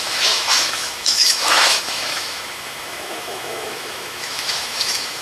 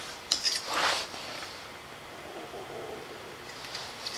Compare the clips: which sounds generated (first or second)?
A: first